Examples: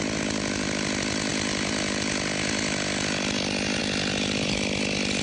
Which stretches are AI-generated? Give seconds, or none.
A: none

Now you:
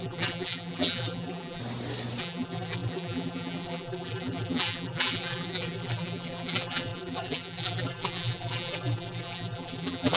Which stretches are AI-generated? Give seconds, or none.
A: 0.0-1.6 (vocoder, BigVGAN v2); 2.2-10.2

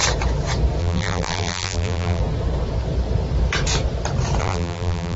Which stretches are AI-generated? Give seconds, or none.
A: 0.8-2.2 (vocoder, BigVGAN v2); 4.4-5.2

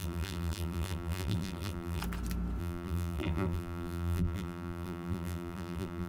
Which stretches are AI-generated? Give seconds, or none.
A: 0.0-2.0 (vocoder, BigVGAN v2); 2.6-6.1

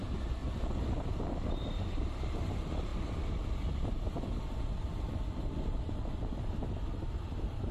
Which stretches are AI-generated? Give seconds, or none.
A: 0.0-0.4 (vocoder, BigVGAN v2); 1.1-2.9